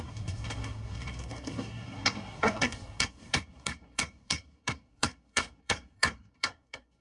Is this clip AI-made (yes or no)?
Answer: yes